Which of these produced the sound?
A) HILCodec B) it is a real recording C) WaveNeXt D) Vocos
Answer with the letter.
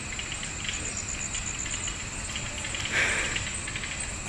B